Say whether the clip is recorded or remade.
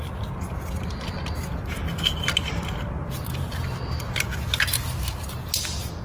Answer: recorded